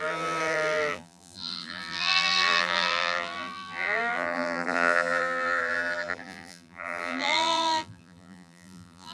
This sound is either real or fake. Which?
fake